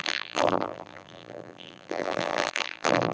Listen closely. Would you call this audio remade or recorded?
remade